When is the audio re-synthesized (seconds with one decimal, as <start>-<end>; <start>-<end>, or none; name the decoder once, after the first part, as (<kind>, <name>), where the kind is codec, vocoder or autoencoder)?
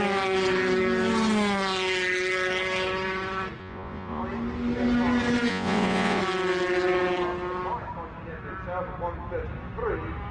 3.6-4.2 (vocoder, Vocos); 5.5-6.2